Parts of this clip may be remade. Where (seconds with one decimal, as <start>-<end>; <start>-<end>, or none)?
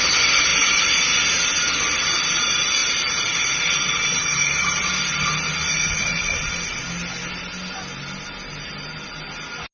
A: none